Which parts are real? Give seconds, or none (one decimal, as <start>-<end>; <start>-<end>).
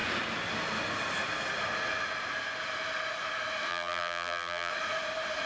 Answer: 0.0-3.7; 4.7-5.5